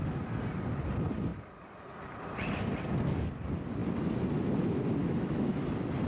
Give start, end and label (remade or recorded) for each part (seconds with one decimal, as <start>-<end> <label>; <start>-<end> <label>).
0.0-5.0 recorded; 5.0-5.6 remade; 5.6-6.1 recorded